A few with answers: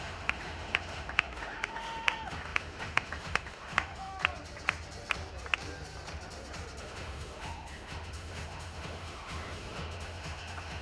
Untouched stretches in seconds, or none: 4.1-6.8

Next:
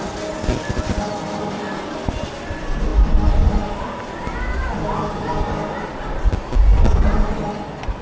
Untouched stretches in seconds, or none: 0.0-8.0

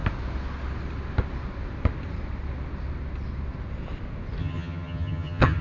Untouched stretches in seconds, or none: 0.0-4.4